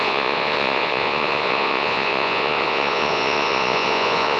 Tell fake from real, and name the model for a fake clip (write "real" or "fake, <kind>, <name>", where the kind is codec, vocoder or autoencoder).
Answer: fake, vocoder, Vocos